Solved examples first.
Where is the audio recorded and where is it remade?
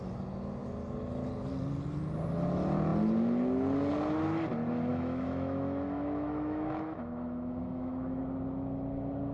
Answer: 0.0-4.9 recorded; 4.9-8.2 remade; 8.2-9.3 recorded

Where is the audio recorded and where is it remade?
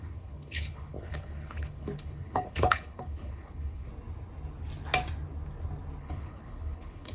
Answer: 0.0-3.9 remade; 3.9-6.0 recorded; 6.0-7.1 remade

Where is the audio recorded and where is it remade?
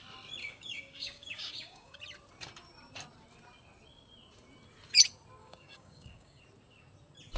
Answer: 0.0-0.4 recorded; 0.4-2.0 remade; 2.0-5.4 recorded; 5.4-6.4 remade; 6.4-7.4 recorded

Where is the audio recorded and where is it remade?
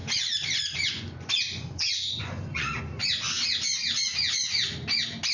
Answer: 0.0-2.8 remade; 2.8-5.3 recorded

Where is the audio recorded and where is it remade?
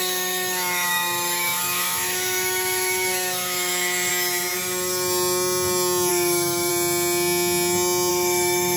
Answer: 0.0-4.1 remade; 4.1-6.1 recorded; 6.1-6.7 remade; 6.7-8.1 recorded; 8.1-8.8 remade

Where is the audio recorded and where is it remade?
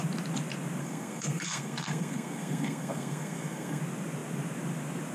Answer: 0.0-0.8 recorded; 0.8-3.8 remade; 3.8-5.1 recorded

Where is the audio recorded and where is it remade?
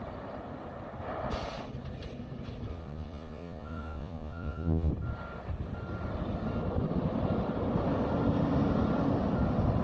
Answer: 0.0-2.7 recorded; 2.7-4.9 remade; 4.9-9.8 recorded